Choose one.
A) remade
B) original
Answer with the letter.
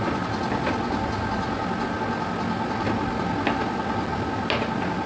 B